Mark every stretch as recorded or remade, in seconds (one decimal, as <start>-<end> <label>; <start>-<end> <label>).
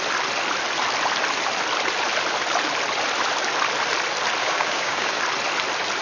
0.0-4.4 recorded; 4.4-5.2 remade; 5.2-6.0 recorded